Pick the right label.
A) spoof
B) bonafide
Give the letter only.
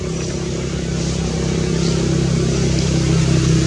B